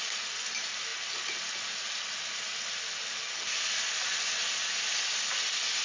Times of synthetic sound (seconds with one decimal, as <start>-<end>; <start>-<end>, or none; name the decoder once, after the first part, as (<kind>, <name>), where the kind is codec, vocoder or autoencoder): none